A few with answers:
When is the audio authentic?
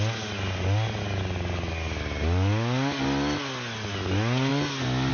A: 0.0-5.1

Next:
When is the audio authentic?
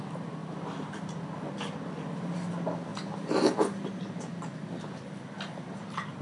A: 0.0-6.2